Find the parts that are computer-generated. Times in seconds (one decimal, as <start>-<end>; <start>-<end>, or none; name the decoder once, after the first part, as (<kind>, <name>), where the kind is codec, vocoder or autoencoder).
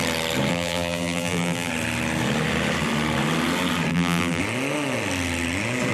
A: 0.5-1.7 (vocoder, BigVGAN v2); 3.9-4.4